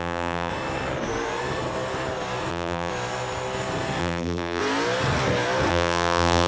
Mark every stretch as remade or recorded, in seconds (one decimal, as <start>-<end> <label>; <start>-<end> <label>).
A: 0.0-0.5 remade; 0.5-2.5 recorded; 2.5-2.9 remade; 2.9-4.0 recorded; 4.0-4.6 remade; 4.6-5.7 recorded; 5.7-6.5 remade